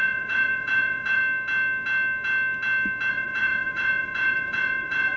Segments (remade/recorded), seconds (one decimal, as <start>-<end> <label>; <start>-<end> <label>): 0.0-1.2 remade; 1.2-3.1 recorded; 3.1-5.2 remade